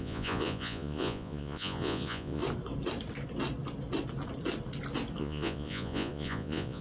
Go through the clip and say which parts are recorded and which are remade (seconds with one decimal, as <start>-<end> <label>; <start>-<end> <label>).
0.0-2.4 remade; 2.4-5.2 recorded; 5.2-6.8 remade